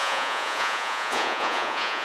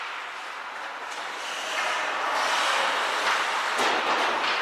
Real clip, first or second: second